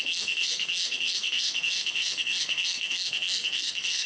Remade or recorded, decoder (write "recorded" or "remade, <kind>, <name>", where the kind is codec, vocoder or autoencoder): remade, codec, SNAC